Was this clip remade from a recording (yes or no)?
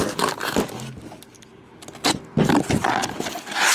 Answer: no